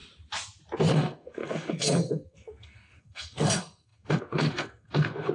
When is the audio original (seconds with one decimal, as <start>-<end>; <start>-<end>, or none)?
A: 0.0-0.9